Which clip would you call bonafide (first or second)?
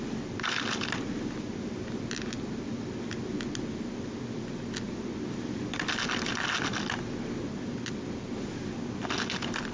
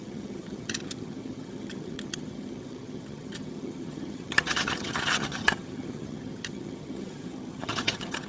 first